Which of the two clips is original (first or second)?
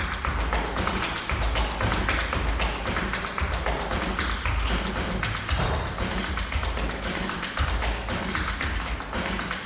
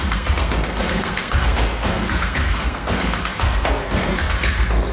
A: first